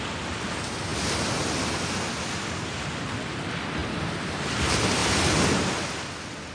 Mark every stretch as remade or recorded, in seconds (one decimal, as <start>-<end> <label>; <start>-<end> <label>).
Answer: 0.0-6.5 recorded